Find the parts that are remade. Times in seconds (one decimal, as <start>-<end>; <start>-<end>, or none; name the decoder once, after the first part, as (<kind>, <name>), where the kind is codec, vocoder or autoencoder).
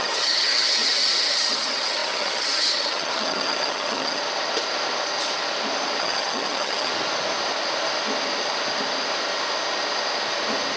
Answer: 0.0-4.2 (vocoder, HiFi-GAN); 6.0-6.9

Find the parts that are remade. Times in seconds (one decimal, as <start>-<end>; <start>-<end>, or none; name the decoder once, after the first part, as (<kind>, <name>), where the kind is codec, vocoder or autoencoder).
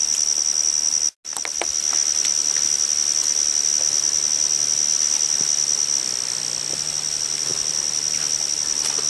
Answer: none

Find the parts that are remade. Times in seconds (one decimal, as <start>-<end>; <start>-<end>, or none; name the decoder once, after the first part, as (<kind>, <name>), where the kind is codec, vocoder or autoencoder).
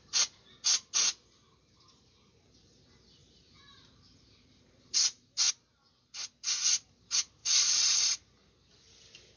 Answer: 3.2-5.5 (vocoder, BigVGAN v2); 7.4-8.0